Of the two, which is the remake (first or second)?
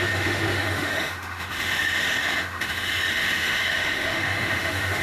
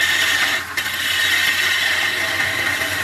first